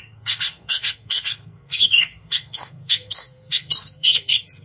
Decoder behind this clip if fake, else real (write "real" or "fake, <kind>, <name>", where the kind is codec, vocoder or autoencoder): fake, codec, SNAC